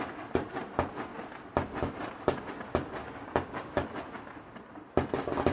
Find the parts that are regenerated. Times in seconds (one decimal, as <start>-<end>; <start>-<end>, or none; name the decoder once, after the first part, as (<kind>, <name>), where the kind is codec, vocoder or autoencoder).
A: 3.0-4.0 (codec, DAC)